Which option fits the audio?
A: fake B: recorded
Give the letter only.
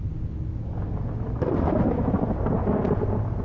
B